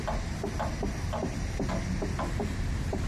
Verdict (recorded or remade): remade